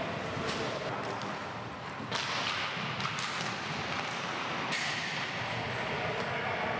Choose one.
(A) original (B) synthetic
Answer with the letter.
A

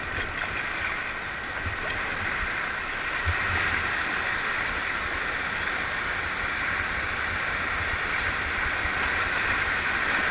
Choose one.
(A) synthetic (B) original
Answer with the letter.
B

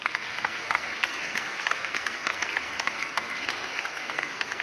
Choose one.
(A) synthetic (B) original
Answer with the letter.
A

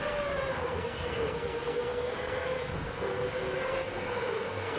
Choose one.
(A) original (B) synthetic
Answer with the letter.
B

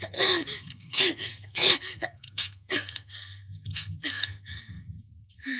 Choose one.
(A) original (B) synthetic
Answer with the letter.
B